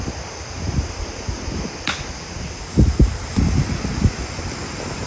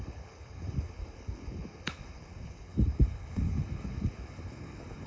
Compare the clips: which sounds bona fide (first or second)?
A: first